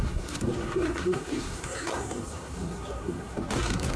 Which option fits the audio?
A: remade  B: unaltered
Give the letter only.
A